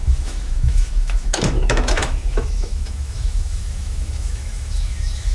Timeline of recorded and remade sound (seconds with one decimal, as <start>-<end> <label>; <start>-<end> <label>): 0.0-5.3 remade